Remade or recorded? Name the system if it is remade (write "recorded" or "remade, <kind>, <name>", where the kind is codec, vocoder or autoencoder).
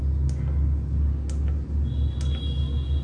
recorded